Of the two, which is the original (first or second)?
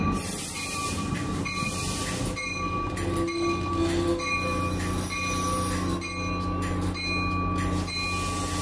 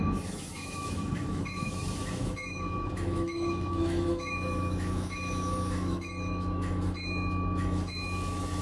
first